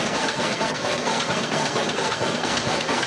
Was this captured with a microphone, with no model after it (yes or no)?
no